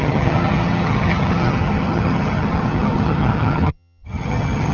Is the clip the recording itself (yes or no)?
no